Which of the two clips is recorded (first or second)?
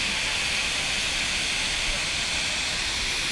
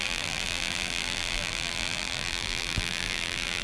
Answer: first